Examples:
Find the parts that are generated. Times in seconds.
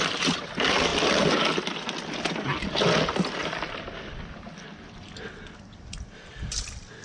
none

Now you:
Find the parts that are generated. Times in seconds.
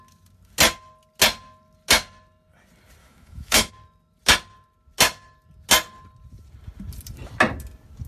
3.0-3.7 (autoencoder, DAC-VAE)